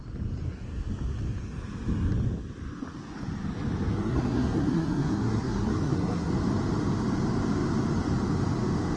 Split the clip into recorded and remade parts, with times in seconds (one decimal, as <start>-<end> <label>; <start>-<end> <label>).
0.0-3.9 recorded; 3.9-6.3 remade; 6.3-9.0 recorded